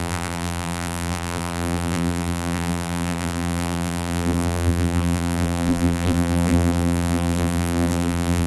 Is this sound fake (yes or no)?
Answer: yes